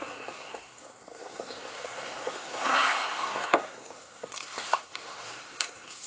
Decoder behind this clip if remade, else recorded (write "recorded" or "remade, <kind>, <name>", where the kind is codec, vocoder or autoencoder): remade, codec, SNAC